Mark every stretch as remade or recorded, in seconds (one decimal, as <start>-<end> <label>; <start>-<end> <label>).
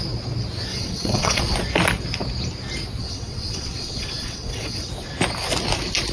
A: 0.0-0.7 recorded; 0.7-1.4 remade; 1.4-3.0 recorded; 3.0-4.9 remade; 4.9-6.1 recorded